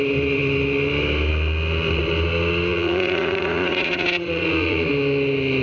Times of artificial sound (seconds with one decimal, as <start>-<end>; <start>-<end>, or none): 2.7-4.9